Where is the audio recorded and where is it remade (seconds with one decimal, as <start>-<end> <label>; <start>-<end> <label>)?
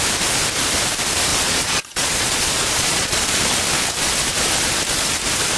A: 0.0-1.3 recorded; 1.3-3.4 remade; 3.4-5.6 recorded